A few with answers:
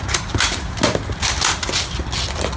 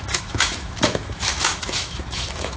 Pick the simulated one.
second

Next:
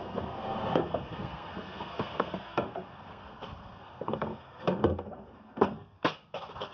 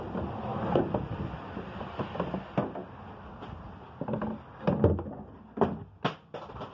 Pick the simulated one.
first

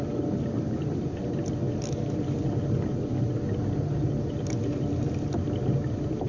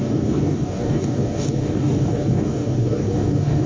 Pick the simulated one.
second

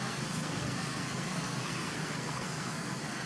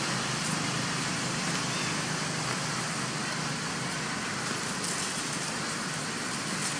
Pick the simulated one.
first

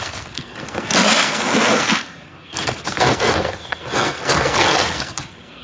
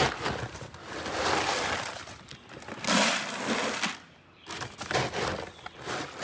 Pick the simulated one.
first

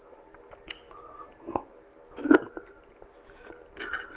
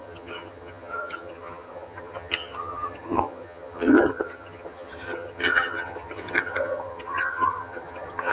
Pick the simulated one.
second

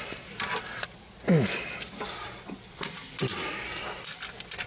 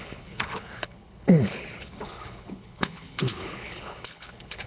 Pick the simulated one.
second